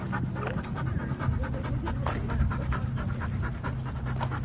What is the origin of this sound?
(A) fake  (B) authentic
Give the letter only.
B